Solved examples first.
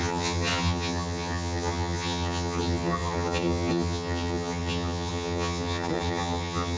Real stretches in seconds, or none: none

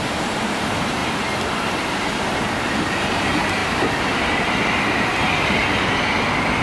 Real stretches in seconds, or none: 1.0-2.9; 5.6-6.6